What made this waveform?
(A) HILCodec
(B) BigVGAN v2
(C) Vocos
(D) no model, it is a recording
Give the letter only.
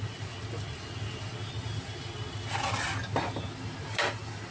D